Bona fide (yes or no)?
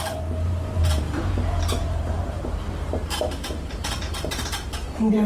no